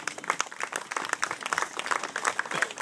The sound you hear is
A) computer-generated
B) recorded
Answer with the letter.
B